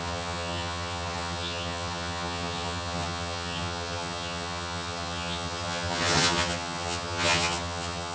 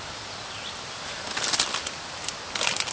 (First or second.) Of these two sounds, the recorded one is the second